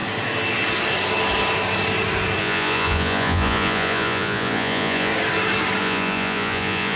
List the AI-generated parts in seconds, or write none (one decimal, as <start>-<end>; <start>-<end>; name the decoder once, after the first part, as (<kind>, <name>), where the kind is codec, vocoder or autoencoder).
2.4-5.1 (vocoder, Vocos); 5.8-7.0